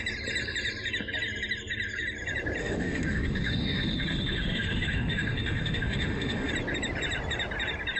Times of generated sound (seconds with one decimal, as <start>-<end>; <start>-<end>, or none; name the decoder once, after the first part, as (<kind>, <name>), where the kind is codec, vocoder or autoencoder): 2.6-6.5 (autoencoder, DAC-VAE)